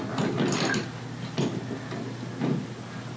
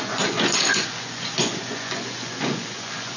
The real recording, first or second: first